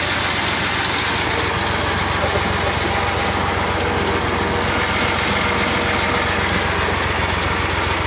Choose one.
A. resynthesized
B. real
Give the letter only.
B